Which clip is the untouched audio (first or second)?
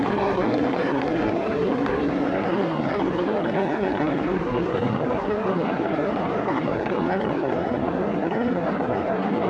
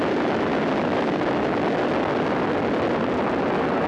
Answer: second